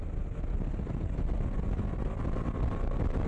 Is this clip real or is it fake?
real